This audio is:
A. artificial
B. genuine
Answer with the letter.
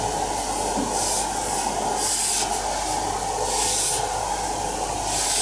B